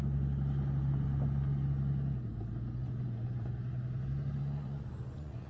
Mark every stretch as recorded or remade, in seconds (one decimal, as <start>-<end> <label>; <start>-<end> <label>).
0.0-2.8 recorded; 2.8-3.5 remade; 3.5-4.4 recorded; 4.4-5.5 remade